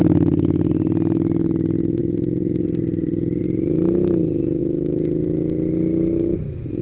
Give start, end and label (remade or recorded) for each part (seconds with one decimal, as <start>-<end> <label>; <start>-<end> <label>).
0.0-2.0 recorded; 2.0-3.4 remade; 3.4-6.8 recorded